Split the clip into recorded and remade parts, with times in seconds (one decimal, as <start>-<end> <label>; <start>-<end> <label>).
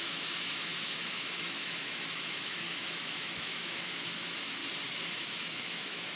0.0-4.6 remade; 4.6-5.1 recorded; 5.1-6.2 remade